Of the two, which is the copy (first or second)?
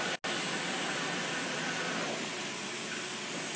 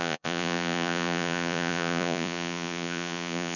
second